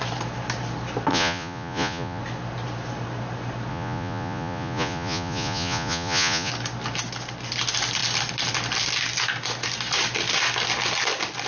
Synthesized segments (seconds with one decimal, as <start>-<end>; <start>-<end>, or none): 1.1-2.2; 3.7-6.5